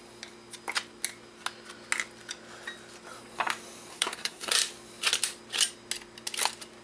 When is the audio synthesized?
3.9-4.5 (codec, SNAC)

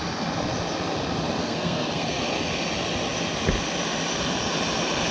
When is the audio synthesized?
1.4-2.2 (codec, SNAC)

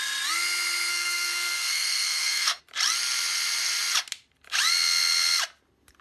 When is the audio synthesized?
0.9-2.6 (codec, SNAC)

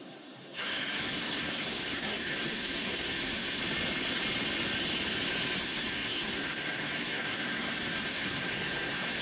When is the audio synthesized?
0.0-3.6 (codec, SNAC); 5.6-9.2

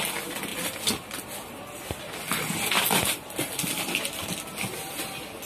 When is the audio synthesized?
none

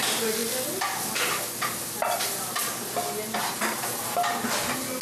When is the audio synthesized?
none

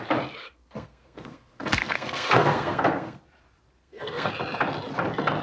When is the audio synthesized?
0.4-3.2 (codec, SNAC); 3.8-4.3

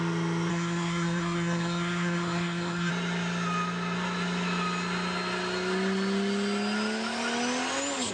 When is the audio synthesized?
0.5-2.9 (codec, SNAC)